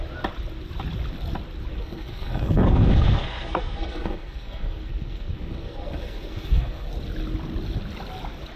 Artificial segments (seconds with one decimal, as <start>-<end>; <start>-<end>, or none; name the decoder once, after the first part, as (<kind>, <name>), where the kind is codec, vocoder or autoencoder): 1.7-6.9 (codec, SNAC)